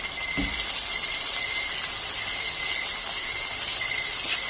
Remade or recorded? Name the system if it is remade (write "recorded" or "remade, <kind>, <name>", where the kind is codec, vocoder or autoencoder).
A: recorded